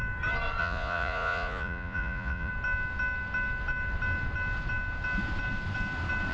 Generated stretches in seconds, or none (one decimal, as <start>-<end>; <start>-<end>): 0.6-2.5